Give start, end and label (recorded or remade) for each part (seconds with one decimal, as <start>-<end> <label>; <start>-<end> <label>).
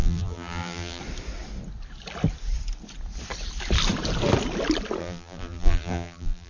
0.0-1.0 remade; 1.0-5.0 recorded; 5.0-6.5 remade